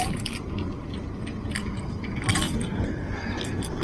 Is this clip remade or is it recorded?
recorded